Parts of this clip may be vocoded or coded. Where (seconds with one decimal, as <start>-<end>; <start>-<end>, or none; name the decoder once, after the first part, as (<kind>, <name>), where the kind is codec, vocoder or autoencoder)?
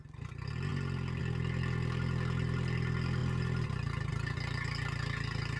none